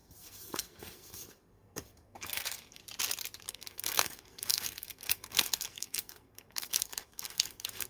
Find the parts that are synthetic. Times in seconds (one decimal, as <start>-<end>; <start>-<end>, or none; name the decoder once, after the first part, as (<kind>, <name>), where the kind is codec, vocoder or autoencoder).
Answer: 0.0-2.8 (codec, SNAC); 3.5-7.9